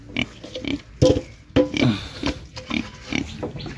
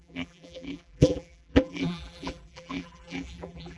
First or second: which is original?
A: first